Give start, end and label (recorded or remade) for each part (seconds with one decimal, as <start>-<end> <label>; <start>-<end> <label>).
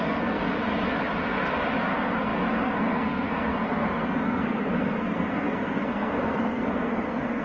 0.0-0.4 remade; 0.4-1.8 recorded; 1.8-7.4 remade